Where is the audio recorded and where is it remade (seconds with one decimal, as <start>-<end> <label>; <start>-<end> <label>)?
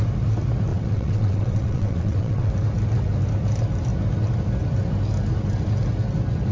0.0-0.7 recorded; 0.7-2.5 remade; 2.5-6.5 recorded